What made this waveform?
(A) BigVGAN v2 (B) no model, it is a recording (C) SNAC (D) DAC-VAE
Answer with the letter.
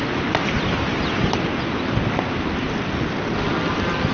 B